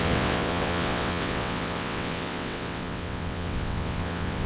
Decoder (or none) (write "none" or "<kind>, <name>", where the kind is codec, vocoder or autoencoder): vocoder, WaveNeXt